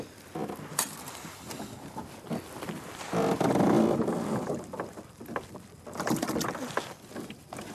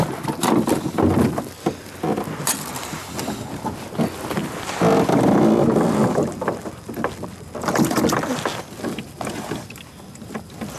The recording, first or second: second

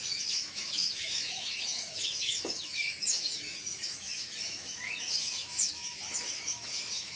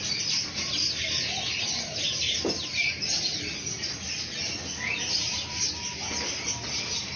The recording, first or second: second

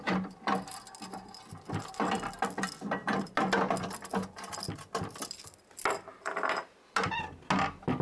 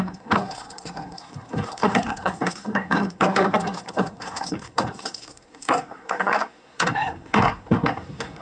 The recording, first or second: first